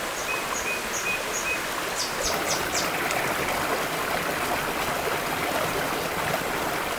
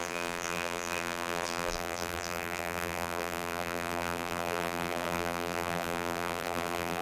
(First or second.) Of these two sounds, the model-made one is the second